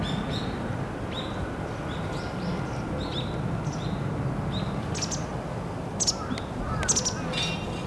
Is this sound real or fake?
real